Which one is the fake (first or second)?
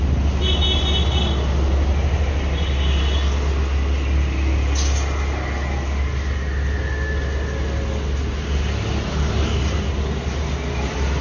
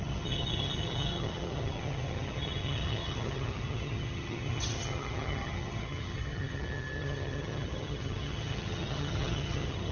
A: second